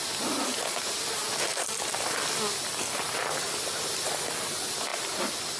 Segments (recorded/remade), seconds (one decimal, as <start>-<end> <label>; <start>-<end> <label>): 0.0-5.6 recorded